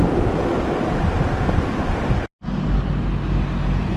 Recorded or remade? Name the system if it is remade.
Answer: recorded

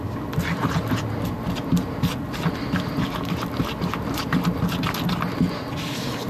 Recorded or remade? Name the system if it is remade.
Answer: recorded